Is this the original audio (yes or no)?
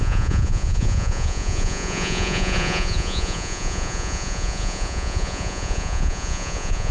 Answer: no